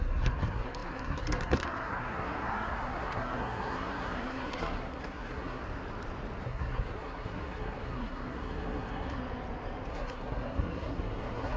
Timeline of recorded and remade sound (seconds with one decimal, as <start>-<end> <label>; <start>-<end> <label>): 0.0-5.6 remade; 5.6-6.4 recorded; 6.4-9.2 remade; 9.2-9.9 recorded; 9.9-11.6 remade

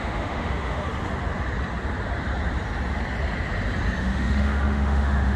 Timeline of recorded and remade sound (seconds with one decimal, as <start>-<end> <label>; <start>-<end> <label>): 0.0-0.8 remade; 0.8-4.0 recorded; 4.0-5.4 remade

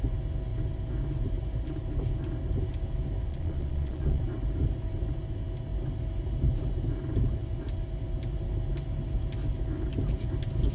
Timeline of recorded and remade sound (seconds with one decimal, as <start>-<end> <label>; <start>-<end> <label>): 0.0-3.3 recorded; 3.3-4.2 remade; 4.2-10.7 recorded

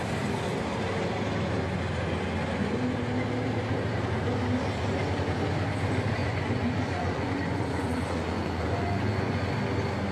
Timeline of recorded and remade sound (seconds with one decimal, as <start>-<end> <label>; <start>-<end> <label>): 0.0-6.2 recorded; 6.2-9.4 remade; 9.4-10.1 recorded